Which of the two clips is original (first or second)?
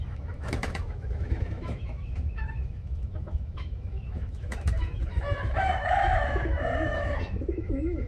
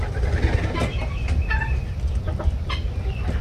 second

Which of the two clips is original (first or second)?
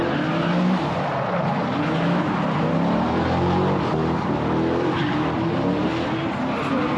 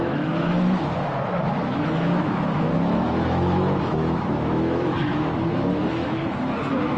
first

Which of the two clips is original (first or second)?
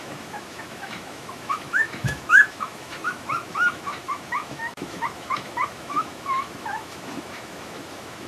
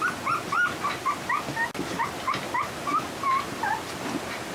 second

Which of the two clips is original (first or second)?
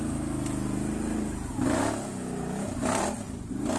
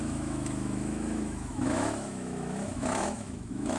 first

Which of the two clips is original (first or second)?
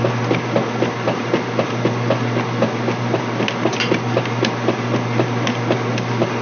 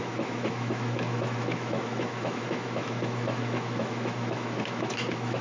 first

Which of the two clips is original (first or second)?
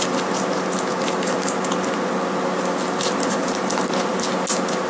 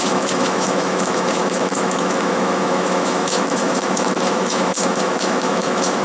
first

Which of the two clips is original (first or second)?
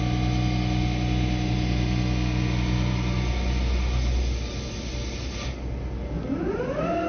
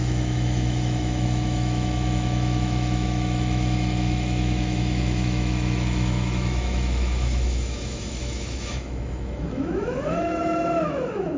first